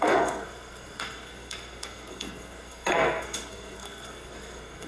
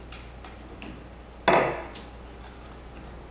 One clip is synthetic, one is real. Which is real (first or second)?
second